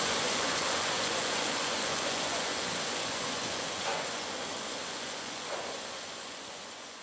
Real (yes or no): no